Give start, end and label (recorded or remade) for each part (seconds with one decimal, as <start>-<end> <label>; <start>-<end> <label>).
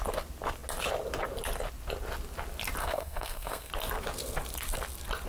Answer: 0.0-2.8 recorded; 2.8-3.7 remade; 3.7-5.3 recorded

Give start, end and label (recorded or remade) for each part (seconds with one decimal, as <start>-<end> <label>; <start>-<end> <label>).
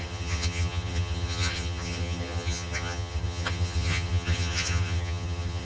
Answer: 0.0-5.6 remade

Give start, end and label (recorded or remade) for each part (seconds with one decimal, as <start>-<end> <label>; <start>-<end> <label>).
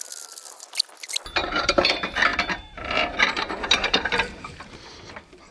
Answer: 0.0-1.4 recorded; 1.4-1.9 remade; 1.9-2.3 recorded; 2.3-4.8 remade; 4.8-5.5 recorded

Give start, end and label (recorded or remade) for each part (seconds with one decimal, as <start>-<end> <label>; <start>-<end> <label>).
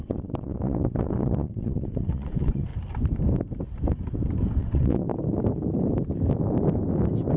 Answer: 0.0-2.7 remade; 2.7-4.6 recorded; 4.6-5.1 remade; 5.1-7.4 recorded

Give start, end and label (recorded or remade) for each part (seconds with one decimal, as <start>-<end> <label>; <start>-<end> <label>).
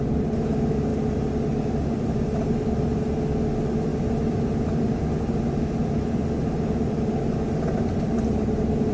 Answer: 0.0-8.9 recorded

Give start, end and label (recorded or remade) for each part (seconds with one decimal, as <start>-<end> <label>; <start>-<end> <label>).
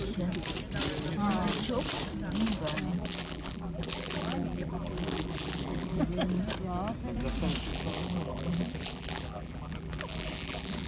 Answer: 0.0-2.9 recorded; 2.9-6.0 remade; 6.0-7.7 recorded; 7.7-10.9 remade